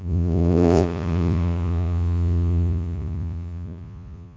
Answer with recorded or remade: remade